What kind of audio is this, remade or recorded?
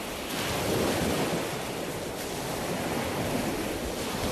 recorded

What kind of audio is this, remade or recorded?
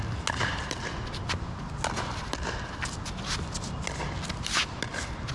recorded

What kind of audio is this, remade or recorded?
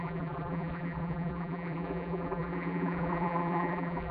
remade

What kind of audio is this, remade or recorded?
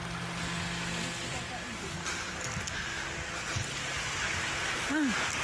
recorded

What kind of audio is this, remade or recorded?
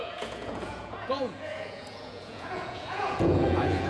remade